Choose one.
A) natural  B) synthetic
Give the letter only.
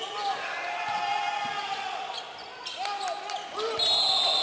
A